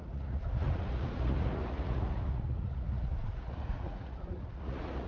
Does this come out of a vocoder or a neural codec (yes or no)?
yes